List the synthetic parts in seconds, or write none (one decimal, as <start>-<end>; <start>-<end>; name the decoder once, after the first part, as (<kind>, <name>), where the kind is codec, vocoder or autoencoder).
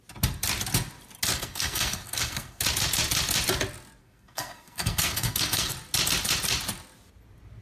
1.3-2.6 (codec, SNAC); 4.0-5.7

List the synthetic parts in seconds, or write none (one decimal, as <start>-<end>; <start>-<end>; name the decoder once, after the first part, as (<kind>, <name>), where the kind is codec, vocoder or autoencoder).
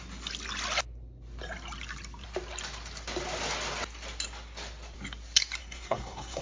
5.6-6.4 (codec, SNAC)